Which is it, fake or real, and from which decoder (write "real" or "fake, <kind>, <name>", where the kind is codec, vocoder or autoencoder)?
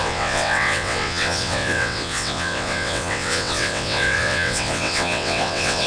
fake, vocoder, WaveNeXt